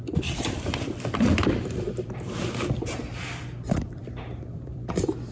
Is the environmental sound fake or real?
fake